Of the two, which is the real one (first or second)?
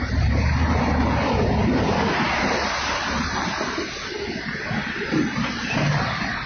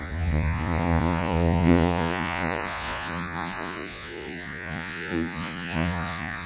first